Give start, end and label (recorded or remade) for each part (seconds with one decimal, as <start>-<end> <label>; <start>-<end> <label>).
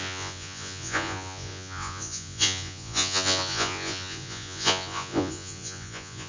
0.0-6.3 remade